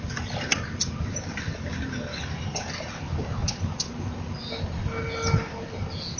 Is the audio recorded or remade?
recorded